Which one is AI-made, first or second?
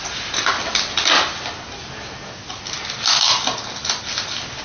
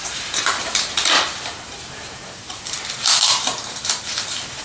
second